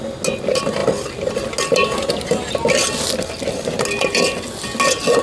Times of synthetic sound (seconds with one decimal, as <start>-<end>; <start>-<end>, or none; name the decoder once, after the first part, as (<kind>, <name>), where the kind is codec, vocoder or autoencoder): none